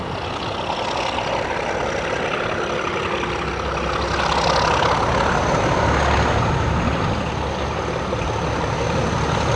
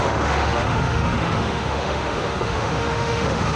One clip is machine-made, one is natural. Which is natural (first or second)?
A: first